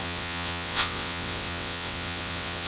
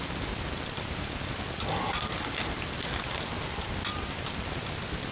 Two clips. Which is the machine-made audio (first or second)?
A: first